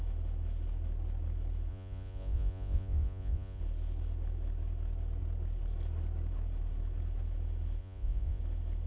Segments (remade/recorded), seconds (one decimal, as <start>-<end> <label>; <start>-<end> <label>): 0.0-1.7 recorded; 1.7-3.6 remade; 3.6-7.8 recorded; 7.8-8.4 remade; 8.4-8.9 recorded

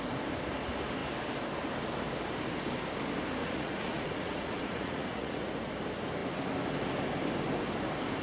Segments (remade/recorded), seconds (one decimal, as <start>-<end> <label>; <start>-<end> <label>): 0.0-3.4 recorded; 3.4-5.5 remade; 5.5-8.2 recorded